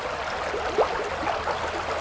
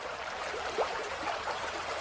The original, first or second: first